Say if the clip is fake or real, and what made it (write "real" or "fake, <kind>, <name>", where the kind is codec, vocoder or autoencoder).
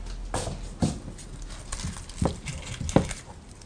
real